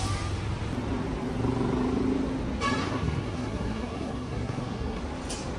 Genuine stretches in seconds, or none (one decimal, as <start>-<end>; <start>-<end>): 0.0-2.8; 5.0-5.6